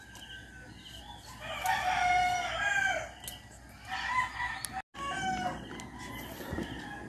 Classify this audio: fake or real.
real